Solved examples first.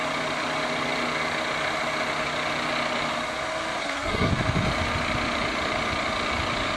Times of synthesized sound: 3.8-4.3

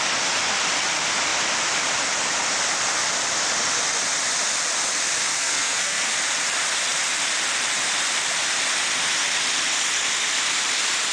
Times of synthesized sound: 5.3-6.1

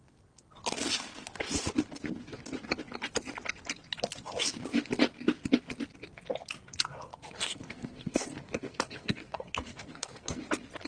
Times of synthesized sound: 7.1-10.4